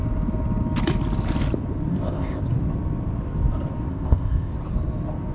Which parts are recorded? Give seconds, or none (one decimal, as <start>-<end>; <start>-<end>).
0.0-1.9; 2.4-3.9; 4.5-5.3